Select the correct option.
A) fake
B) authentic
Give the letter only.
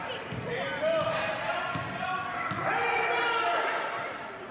B